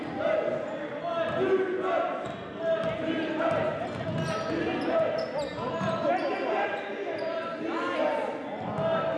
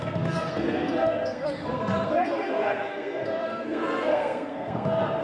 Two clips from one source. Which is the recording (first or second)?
first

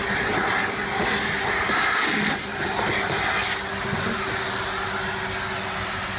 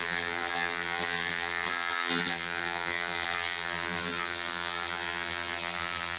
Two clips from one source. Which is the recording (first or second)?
first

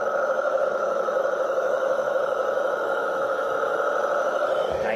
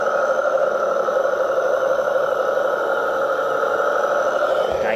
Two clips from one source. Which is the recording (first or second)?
second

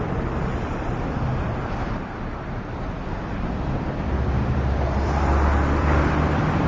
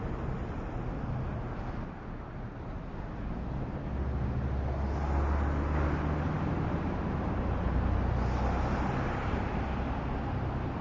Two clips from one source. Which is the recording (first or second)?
second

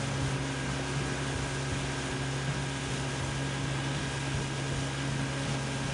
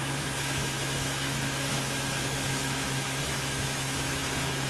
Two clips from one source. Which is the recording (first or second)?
first